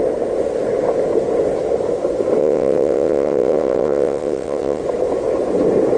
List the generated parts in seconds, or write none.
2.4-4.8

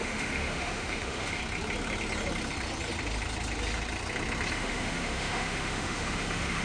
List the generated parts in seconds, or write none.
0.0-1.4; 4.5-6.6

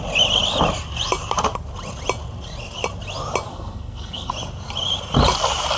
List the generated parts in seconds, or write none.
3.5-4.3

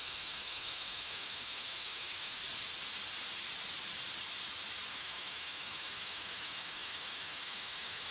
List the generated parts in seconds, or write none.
0.0-2.4; 4.9-8.1

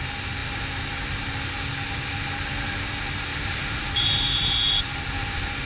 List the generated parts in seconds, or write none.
3.3-4.5